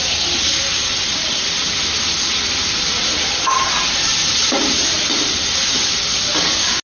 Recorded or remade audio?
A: recorded